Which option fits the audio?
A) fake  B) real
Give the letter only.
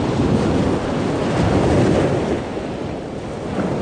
B